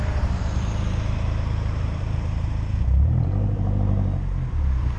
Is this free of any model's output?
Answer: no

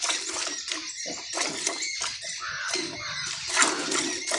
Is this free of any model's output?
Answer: no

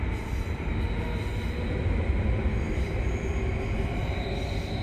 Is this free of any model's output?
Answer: yes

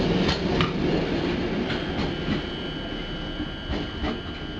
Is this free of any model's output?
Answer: yes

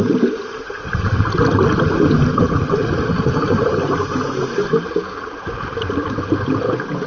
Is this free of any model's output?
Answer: no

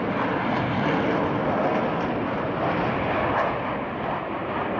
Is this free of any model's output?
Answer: yes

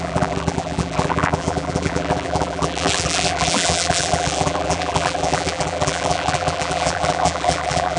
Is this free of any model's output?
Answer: no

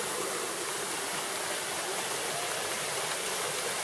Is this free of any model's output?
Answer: yes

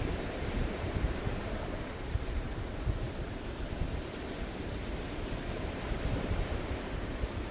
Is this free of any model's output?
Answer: no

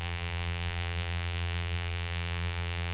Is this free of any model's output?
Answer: no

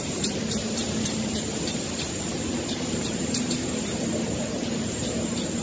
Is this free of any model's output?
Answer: no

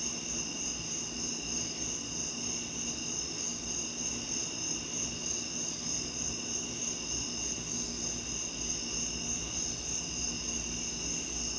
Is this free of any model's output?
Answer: yes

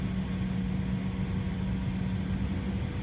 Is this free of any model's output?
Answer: yes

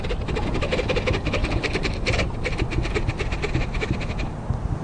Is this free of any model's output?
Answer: yes